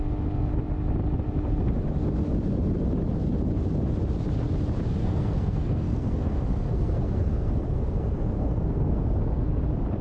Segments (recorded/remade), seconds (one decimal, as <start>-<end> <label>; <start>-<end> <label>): 0.0-5.0 recorded; 5.0-9.6 remade; 9.6-10.0 recorded

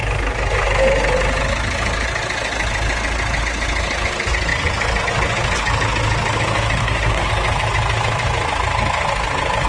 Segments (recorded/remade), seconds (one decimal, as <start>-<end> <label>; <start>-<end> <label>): 0.0-6.8 recorded; 6.8-7.3 remade; 7.3-9.7 recorded